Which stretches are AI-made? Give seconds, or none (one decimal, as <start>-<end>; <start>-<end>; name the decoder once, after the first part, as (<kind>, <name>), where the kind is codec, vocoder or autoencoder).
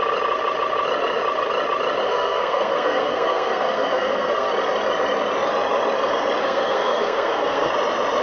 2.1-4.5 (codec, SNAC); 6.4-7.7